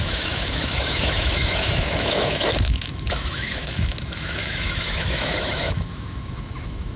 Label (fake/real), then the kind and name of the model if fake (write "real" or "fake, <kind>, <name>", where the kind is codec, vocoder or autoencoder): fake, autoencoder, DAC-VAE